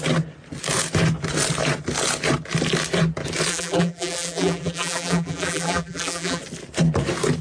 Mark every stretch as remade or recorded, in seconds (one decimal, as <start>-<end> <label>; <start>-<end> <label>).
0.0-3.5 recorded; 3.5-6.4 remade; 6.4-7.4 recorded